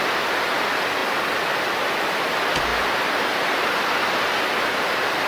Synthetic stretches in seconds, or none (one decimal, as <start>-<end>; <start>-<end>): none